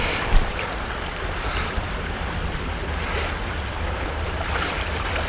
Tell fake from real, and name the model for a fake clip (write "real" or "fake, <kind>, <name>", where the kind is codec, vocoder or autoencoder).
fake, vocoder, BigVGAN v2